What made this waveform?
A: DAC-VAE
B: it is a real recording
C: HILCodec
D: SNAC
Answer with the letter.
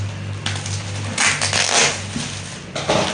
B